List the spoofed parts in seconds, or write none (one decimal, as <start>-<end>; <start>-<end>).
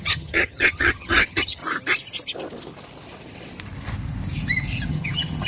0.0-1.6; 4.9-5.5